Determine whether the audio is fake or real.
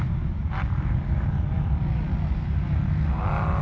real